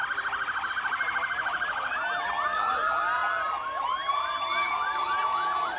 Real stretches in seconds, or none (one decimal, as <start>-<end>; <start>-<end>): 0.0-0.7